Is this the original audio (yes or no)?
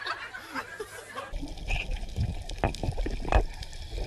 yes